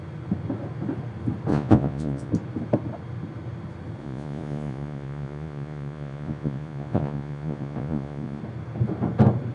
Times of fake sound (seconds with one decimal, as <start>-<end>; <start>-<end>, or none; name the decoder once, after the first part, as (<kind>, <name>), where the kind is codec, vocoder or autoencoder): 1.5-2.3 (vocoder, Vocos); 4.0-8.4